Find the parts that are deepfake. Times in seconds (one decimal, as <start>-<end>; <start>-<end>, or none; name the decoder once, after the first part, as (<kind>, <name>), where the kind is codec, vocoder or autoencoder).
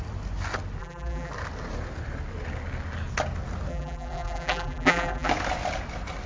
0.8-1.3 (vocoder, BigVGAN v2); 3.7-5.3